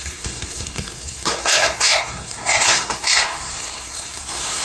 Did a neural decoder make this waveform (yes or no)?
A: yes